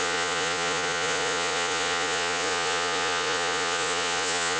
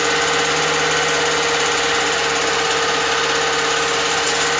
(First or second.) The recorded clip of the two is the second